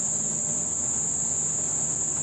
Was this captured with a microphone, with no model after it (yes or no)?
yes